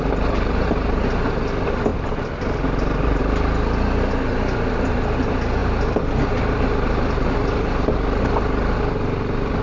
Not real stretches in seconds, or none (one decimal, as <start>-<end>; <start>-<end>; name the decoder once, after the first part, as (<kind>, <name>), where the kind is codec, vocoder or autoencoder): none